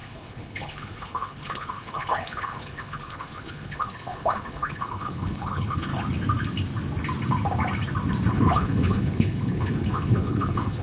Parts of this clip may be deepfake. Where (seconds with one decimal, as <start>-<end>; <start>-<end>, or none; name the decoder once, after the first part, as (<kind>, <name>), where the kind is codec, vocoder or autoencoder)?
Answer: 0.0-5.9 (codec, HILCodec); 8.3-10.8